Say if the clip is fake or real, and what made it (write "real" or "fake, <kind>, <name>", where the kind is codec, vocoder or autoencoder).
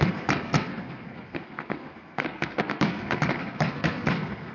fake, codec, SNAC